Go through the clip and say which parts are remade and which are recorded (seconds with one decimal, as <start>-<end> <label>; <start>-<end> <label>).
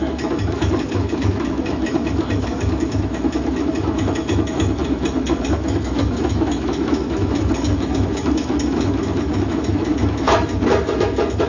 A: 0.0-11.5 remade